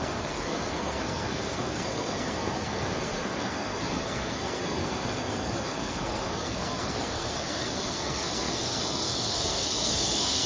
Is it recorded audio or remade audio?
remade